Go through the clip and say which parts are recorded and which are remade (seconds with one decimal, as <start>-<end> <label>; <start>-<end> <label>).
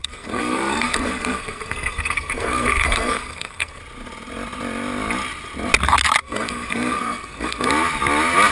0.0-3.8 remade; 3.8-6.2 recorded; 6.2-7.7 remade; 7.7-8.5 recorded